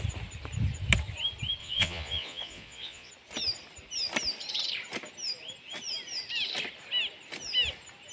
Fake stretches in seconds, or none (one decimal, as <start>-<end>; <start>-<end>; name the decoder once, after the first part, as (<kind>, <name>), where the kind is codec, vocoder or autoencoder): 1.6-3.1 (vocoder, Vocos)